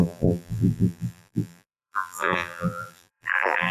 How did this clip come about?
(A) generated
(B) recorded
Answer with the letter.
A